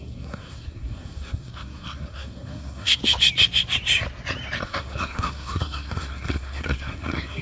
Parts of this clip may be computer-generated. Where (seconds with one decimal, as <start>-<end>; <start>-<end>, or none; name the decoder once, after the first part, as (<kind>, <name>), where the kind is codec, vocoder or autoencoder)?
0.0-3.0 (codec, SNAC); 4.6-7.4